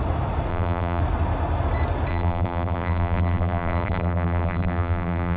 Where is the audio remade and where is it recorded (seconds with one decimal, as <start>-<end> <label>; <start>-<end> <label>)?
0.0-0.5 recorded; 0.5-1.0 remade; 1.0-2.1 recorded; 2.1-5.4 remade